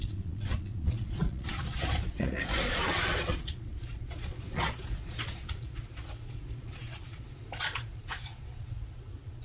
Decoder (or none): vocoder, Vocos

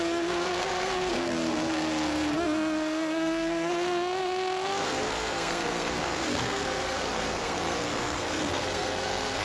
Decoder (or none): codec, SNAC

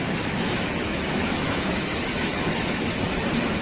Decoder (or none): autoencoder, DAC-VAE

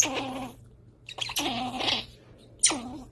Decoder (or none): none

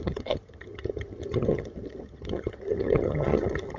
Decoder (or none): vocoder, HiFi-GAN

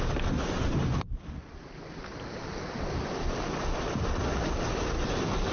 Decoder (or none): none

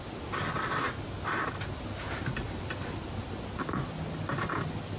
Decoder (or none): none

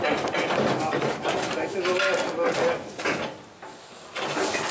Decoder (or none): none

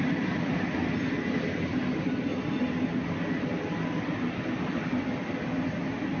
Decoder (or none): none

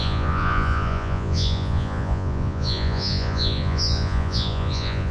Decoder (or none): vocoder, Vocos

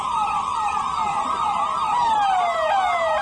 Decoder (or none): none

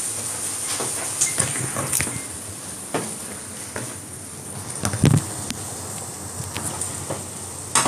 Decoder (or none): none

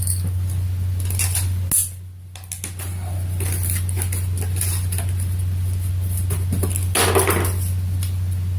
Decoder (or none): none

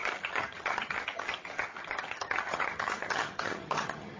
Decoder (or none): vocoder, HiFi-GAN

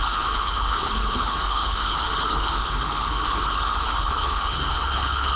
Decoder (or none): codec, HILCodec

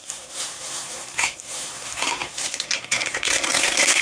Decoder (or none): codec, SNAC